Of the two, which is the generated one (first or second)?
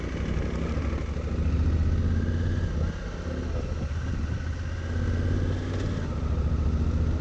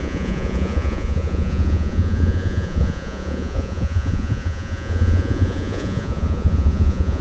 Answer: second